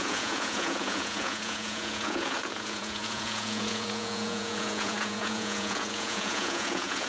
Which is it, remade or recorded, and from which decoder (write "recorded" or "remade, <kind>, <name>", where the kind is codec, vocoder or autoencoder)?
remade, vocoder, Vocos